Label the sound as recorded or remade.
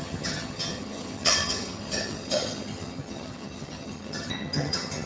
remade